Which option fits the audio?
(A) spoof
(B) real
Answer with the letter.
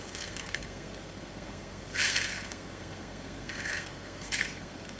A